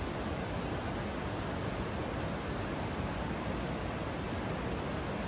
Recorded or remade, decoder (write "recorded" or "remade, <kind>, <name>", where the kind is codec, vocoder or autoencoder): recorded